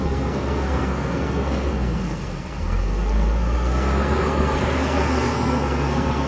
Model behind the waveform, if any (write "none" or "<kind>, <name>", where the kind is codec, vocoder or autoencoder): codec, SNAC